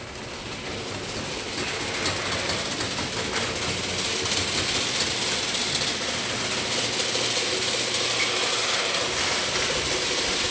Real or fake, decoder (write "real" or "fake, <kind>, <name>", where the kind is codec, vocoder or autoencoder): real